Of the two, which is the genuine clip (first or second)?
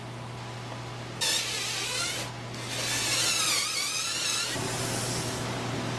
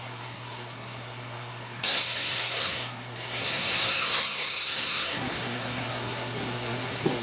first